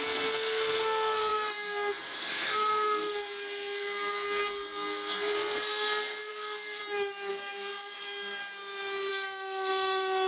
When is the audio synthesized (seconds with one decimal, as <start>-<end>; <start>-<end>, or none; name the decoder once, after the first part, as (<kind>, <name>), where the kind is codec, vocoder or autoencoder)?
0.0-6.8 (codec, SNAC); 7.3-8.4; 9.1-10.3